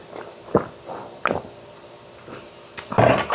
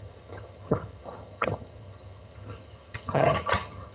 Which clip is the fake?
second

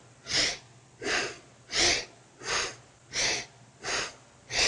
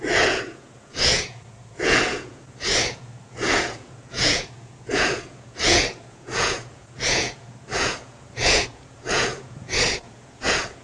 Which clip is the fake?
second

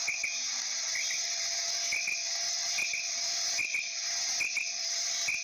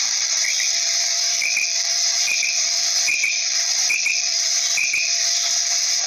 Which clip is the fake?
second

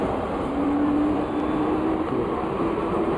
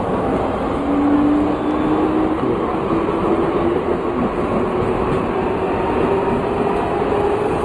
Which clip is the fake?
first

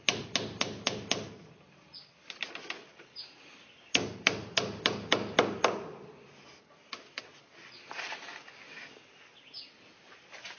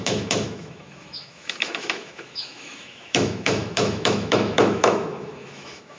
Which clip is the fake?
second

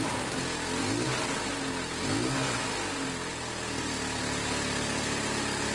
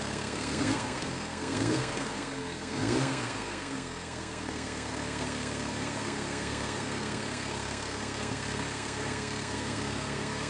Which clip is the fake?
second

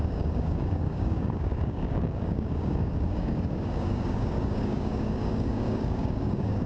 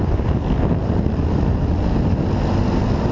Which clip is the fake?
first